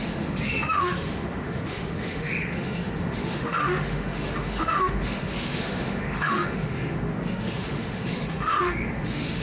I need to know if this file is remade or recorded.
remade